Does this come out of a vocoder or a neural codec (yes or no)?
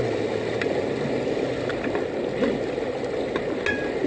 no